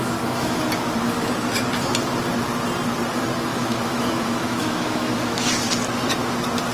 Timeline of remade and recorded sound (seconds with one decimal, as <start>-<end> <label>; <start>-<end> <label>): 0.0-0.6 remade; 0.6-3.5 recorded; 3.5-5.5 remade; 5.5-6.7 recorded